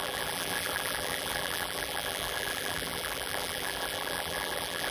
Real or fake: fake